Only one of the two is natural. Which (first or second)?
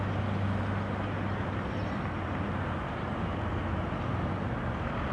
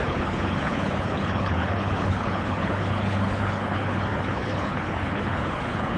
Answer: first